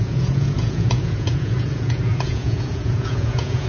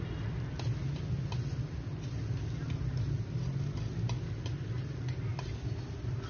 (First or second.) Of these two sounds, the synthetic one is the first